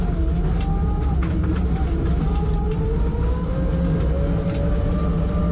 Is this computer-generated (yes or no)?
no